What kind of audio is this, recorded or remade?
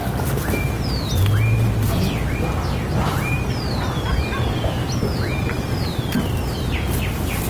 recorded